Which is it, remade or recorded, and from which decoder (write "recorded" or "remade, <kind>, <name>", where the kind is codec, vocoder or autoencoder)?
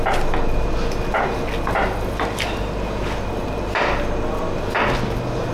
recorded